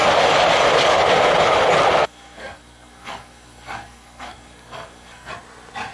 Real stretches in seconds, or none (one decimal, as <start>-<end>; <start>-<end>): 0.0-2.0; 5.3-5.9